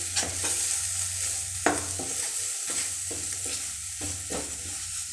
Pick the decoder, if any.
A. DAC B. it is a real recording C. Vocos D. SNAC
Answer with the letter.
B